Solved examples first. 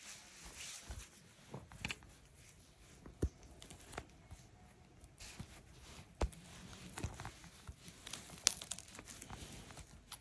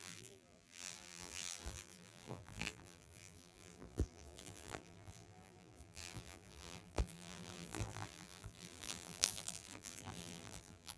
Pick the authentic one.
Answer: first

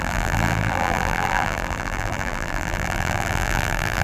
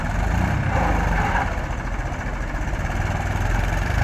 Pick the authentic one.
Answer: second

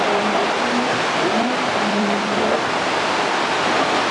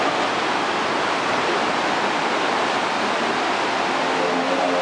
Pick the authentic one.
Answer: second